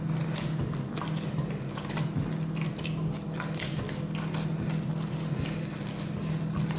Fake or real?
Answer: real